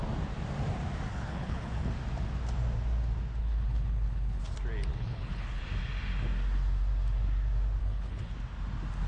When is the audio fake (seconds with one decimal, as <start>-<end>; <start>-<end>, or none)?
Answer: 1.1-1.9; 3.4-4.4; 4.9-5.6; 7.8-8.3